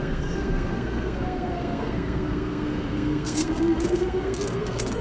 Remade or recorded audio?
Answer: remade